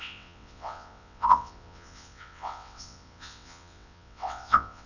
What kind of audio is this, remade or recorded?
remade